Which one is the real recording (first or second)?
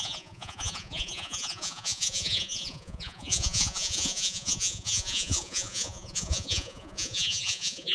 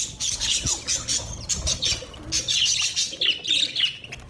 second